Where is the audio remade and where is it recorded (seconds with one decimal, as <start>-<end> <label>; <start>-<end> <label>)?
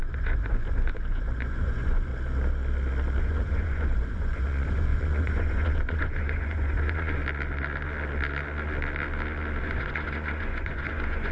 0.0-2.1 remade; 2.1-3.2 recorded; 3.2-7.2 remade; 7.2-9.6 recorded; 9.6-11.3 remade